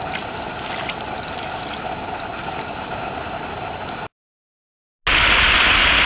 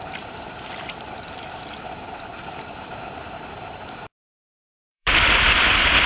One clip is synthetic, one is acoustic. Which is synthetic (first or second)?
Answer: second